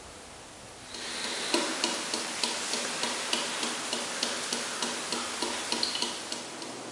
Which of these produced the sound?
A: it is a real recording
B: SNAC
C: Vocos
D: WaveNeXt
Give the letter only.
A